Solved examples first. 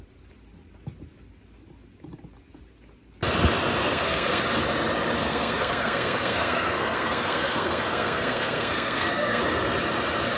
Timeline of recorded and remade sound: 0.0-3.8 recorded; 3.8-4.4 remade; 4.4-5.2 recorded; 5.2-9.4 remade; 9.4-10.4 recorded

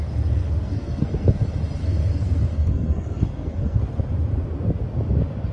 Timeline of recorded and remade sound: 0.0-0.4 recorded; 0.4-1.4 remade; 1.4-1.8 recorded; 1.8-3.8 remade; 3.8-5.5 recorded

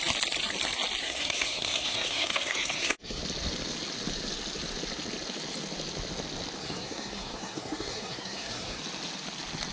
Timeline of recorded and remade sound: 0.0-1.0 recorded; 1.0-3.2 remade; 3.2-6.6 recorded; 6.6-8.8 remade; 8.8-9.7 recorded

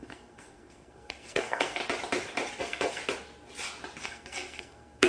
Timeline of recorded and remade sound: 0.0-1.8 remade; 1.8-2.6 recorded; 2.6-3.0 remade; 3.0-4.0 recorded; 4.0-5.1 remade

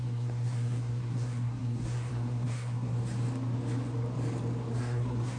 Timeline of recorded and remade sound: 0.0-3.0 remade; 3.0-4.8 recorded; 4.8-5.4 remade

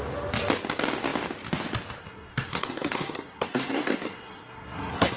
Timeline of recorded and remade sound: 0.0-2.0 recorded; 2.0-5.2 remade

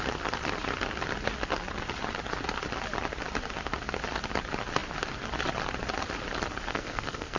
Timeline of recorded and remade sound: 0.0-6.7 recorded; 6.7-7.4 remade

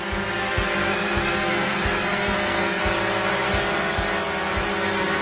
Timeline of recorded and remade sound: 0.0-0.4 recorded; 0.4-2.8 remade; 2.8-5.2 recorded